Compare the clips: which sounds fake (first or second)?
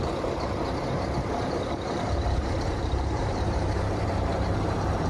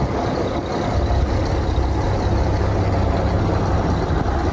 first